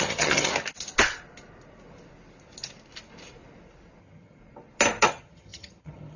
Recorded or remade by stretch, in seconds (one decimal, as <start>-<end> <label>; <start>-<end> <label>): 0.0-0.5 remade; 0.5-4.0 recorded; 4.0-4.4 remade; 4.4-5.0 recorded; 5.0-6.2 remade